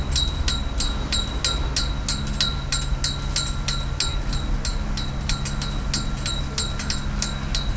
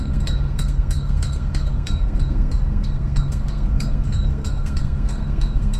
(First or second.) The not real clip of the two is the second